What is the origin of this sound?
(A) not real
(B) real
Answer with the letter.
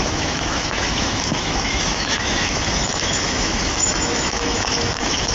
A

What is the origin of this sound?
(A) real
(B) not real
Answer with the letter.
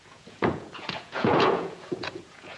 B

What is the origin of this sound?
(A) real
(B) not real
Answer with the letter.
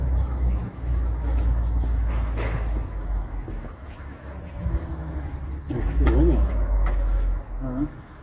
B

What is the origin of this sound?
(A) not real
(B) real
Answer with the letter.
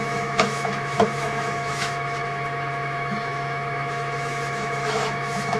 A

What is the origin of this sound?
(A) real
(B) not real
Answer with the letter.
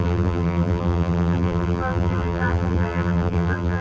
B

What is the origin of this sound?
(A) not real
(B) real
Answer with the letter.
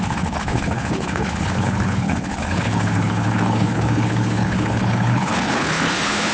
A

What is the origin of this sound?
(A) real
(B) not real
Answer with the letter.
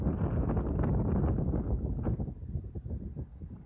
A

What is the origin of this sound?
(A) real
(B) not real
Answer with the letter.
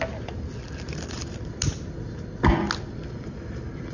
A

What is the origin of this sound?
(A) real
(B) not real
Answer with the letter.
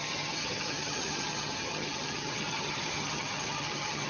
B